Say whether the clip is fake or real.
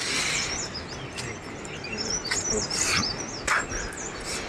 real